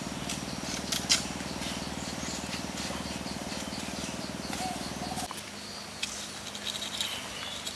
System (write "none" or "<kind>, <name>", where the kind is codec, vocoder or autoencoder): none